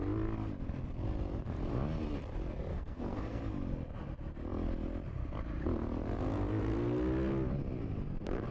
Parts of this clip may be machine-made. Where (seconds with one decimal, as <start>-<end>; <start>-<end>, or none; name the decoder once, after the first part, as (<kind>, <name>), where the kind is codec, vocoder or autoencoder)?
2.7-3.4 (codec, SNAC)